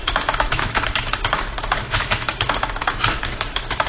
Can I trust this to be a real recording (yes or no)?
no